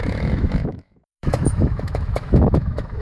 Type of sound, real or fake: fake